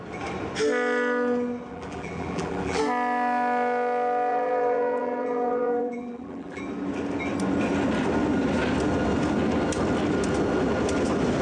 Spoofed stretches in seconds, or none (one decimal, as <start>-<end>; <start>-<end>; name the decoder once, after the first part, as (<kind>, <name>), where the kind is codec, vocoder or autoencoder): 1.7-2.8 (vocoder, BigVGAN v2); 4.3-6.6